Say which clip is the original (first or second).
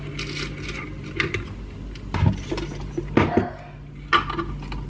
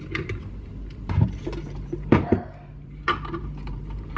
first